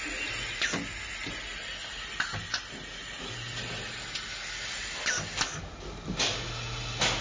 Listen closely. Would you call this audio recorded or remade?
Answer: recorded